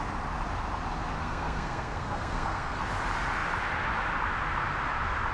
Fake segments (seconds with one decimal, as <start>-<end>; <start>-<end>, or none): 1.2-2.8